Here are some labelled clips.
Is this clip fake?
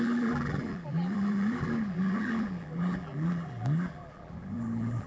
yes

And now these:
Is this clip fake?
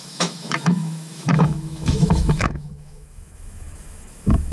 yes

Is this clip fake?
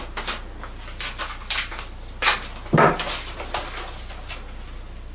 no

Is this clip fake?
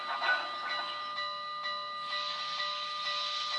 no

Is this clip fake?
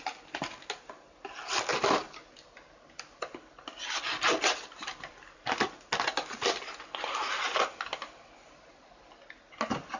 no